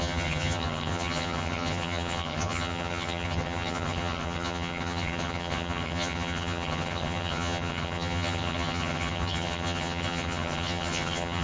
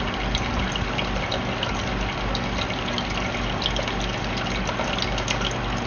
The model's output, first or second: first